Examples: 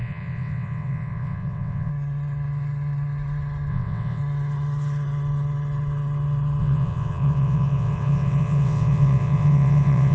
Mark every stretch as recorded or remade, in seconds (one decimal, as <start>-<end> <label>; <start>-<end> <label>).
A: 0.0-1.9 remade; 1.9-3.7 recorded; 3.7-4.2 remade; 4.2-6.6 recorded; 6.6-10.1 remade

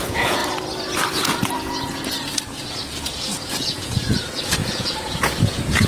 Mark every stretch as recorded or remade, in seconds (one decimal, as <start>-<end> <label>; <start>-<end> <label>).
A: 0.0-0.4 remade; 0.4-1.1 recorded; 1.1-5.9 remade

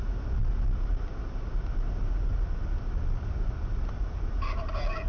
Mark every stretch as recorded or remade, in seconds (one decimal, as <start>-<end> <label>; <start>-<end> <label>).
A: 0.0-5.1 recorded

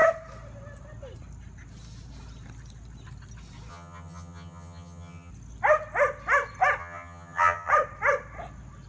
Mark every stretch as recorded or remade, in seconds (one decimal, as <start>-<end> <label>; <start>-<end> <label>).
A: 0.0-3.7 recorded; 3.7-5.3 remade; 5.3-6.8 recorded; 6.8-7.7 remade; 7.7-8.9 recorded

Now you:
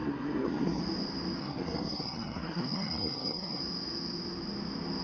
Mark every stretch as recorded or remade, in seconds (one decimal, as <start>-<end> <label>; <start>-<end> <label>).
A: 0.0-0.8 remade; 0.8-1.4 recorded; 1.4-3.6 remade; 3.6-5.0 recorded

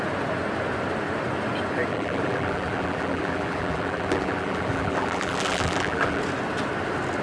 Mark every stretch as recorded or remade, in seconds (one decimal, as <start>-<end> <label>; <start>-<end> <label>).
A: 0.0-1.9 recorded; 1.9-6.2 remade; 6.2-7.2 recorded

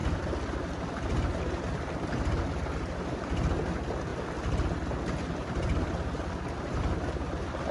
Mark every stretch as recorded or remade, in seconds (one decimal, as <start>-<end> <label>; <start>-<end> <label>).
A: 0.0-7.7 recorded